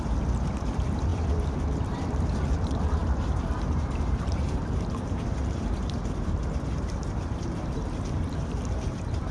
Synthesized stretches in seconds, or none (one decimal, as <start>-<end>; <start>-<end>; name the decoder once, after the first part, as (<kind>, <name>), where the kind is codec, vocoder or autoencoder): 0.0-9.3 (vocoder, BigVGAN v2)